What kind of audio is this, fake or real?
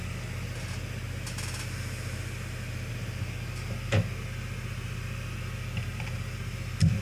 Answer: real